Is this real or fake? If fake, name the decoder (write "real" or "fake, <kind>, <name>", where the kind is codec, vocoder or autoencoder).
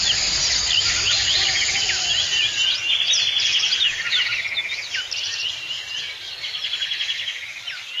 real